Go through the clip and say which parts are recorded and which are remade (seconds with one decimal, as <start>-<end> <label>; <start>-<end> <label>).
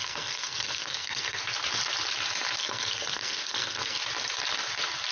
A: 0.0-1.4 remade; 1.4-2.6 recorded; 2.6-4.0 remade; 4.0-5.1 recorded